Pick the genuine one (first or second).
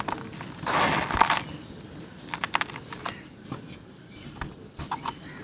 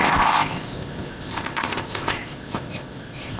first